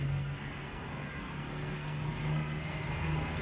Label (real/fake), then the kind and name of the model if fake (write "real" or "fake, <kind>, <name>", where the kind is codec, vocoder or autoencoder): fake, codec, SNAC